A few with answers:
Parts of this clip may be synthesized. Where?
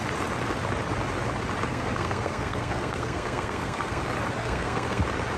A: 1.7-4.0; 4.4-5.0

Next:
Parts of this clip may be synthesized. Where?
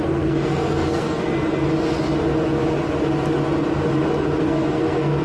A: 0.0-1.3; 4.4-5.2